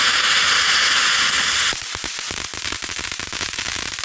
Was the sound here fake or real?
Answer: real